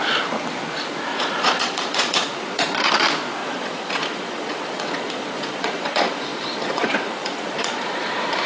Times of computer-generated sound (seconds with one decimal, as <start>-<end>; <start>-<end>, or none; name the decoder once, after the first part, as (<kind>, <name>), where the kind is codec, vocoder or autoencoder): 1.1-2.9 (vocoder, Vocos); 3.4-8.5